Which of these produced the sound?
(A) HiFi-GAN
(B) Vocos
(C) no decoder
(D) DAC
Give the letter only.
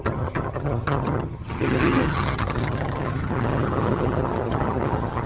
A